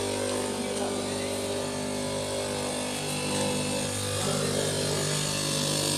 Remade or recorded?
recorded